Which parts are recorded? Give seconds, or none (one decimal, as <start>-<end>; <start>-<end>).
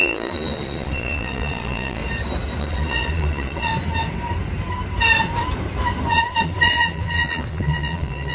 2.0-2.6; 3.7-6.1